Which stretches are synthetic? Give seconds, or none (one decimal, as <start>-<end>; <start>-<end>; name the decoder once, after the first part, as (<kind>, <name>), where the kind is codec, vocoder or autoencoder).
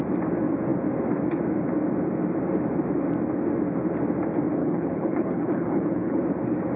4.6-6.2 (codec, HILCodec)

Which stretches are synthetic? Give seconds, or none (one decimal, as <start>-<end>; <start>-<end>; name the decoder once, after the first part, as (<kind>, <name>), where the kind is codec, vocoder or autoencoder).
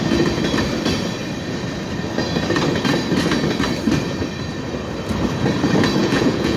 6.0-6.6 (vocoder, Vocos)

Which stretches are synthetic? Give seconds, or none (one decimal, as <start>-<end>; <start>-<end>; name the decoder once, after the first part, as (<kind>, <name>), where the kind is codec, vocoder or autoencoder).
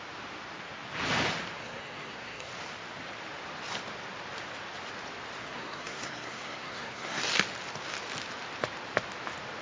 1.6-2.5 (codec, SNAC); 5.4-7.2